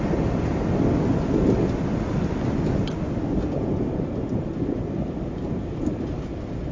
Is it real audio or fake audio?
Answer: real